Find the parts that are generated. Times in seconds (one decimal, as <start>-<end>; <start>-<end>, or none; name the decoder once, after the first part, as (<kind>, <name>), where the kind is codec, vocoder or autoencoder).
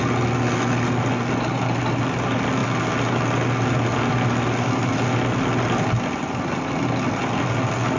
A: none